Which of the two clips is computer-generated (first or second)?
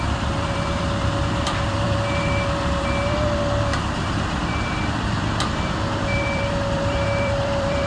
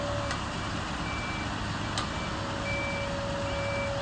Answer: first